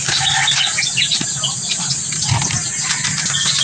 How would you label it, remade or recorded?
recorded